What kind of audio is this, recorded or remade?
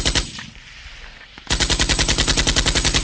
recorded